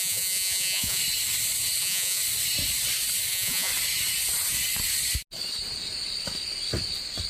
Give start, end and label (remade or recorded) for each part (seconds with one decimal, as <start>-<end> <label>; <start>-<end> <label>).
0.0-1.0 remade; 1.0-1.8 recorded; 1.8-2.2 remade; 2.2-3.3 recorded; 3.3-3.7 remade; 3.7-7.3 recorded